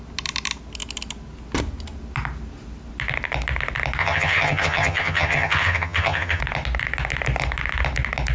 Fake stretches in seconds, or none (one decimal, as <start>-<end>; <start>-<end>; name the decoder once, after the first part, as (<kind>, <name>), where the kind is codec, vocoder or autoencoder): 4.0-6.4 (vocoder, HiFi-GAN)